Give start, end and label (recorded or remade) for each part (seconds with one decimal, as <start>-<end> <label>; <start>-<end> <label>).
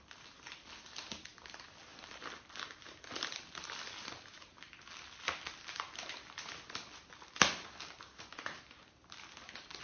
0.0-9.8 recorded